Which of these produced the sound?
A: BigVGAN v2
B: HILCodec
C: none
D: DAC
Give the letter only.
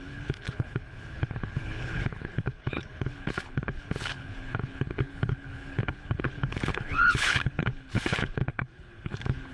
B